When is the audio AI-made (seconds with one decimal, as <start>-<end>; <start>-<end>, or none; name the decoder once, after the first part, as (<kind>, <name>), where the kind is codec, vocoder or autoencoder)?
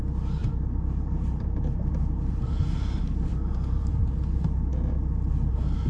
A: 0.4-3.9 (vocoder, BigVGAN v2)